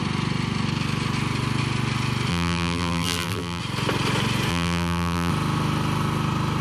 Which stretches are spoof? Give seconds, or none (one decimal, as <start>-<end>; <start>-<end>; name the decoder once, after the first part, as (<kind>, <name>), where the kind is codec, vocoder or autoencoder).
2.3-3.6 (vocoder, BigVGAN v2); 4.5-5.3